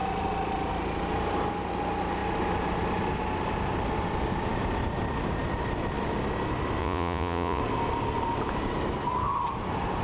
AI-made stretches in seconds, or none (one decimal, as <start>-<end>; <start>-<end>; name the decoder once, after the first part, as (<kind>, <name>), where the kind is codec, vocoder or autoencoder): 6.8-7.6 (vocoder, Vocos)